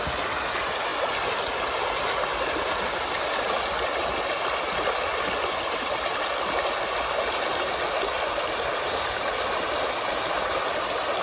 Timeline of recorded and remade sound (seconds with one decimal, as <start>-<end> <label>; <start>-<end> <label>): 0.0-11.2 recorded